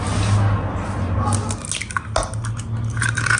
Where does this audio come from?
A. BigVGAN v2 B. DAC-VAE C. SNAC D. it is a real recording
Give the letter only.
D